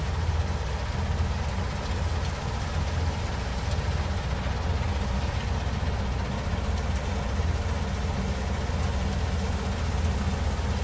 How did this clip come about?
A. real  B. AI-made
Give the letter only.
A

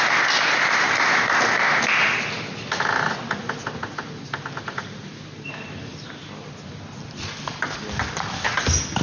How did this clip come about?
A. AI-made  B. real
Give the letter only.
B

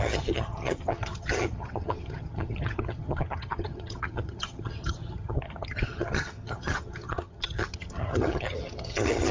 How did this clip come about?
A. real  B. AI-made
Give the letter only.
B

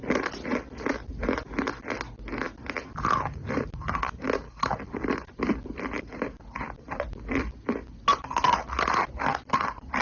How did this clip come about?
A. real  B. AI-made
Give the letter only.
A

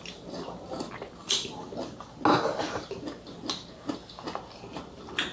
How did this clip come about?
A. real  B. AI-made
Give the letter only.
A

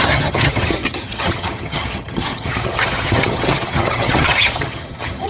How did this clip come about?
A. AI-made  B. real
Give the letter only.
A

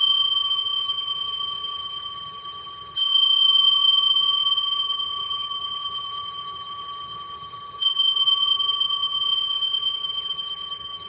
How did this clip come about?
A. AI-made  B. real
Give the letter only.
A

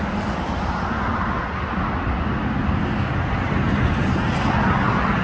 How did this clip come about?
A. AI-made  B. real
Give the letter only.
B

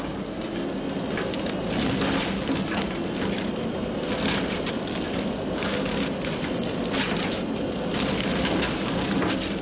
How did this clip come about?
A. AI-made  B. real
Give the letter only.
B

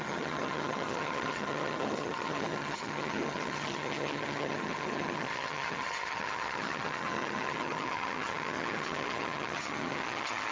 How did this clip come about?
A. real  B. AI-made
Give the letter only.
B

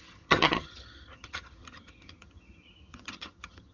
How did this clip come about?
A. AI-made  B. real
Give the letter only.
A